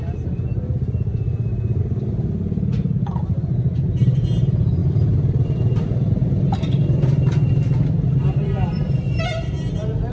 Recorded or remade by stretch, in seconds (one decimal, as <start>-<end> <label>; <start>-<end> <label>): 0.0-4.8 recorded; 4.8-9.5 remade; 9.5-10.1 recorded